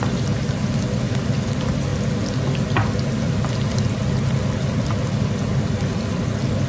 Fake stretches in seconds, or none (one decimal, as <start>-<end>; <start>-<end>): none